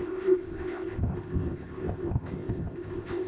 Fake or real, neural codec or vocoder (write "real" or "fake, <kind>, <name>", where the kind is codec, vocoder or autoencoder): fake, codec, ZipCodec